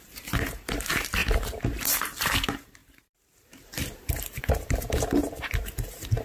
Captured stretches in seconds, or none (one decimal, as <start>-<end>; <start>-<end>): 1.2-2.2